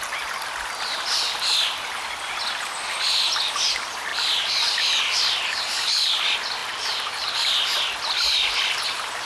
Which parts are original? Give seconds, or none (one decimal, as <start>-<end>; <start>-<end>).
0.0-9.3